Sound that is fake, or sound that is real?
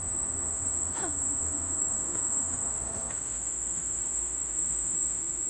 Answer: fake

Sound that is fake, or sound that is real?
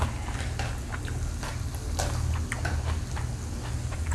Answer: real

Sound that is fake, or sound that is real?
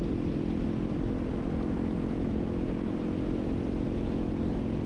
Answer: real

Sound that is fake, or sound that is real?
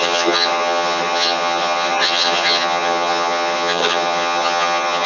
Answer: fake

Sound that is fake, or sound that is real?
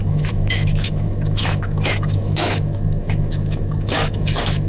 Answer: fake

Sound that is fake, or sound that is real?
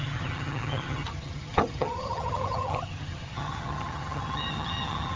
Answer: fake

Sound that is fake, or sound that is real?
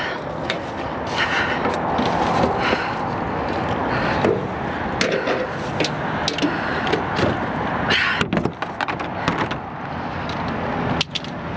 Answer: real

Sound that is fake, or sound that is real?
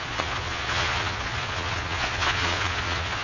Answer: fake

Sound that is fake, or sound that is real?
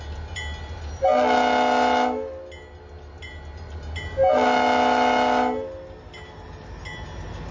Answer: real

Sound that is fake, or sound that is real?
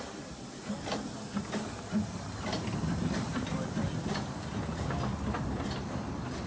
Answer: real